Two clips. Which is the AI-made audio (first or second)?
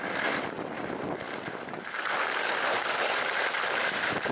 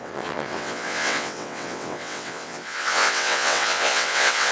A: second